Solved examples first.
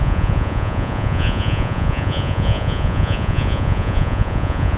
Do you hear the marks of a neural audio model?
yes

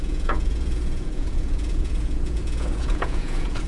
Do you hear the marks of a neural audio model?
yes